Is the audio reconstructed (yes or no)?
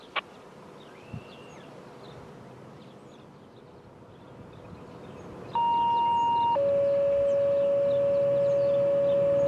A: no